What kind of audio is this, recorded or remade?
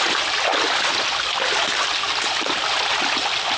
recorded